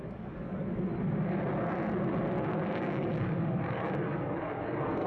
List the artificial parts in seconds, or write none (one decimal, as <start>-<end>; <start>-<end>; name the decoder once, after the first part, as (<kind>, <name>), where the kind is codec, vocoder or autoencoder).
0.0-0.6 (codec, DAC); 2.8-5.1